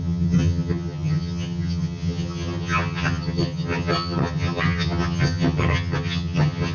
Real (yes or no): no